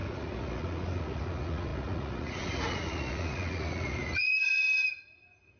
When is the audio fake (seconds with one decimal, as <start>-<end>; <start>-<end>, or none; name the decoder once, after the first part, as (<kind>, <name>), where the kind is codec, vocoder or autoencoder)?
0.0-5.6 (vocoder, Vocos)